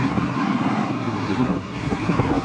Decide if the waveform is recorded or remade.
remade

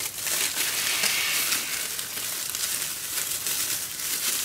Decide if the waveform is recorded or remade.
recorded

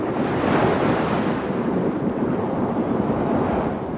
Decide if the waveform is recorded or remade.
recorded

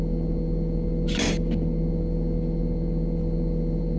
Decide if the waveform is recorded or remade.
recorded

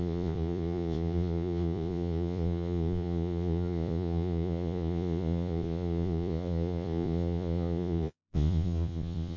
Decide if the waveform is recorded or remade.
remade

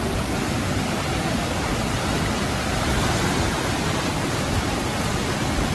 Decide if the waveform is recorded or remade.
recorded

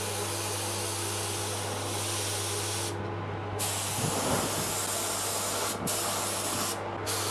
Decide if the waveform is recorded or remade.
recorded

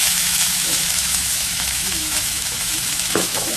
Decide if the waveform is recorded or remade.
remade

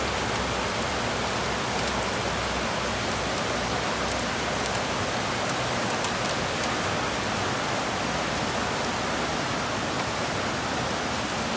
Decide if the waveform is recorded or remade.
recorded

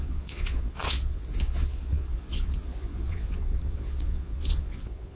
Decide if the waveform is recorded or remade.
remade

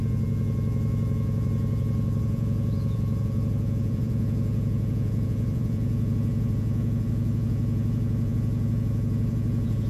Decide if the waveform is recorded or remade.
remade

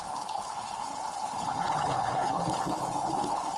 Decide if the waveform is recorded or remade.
remade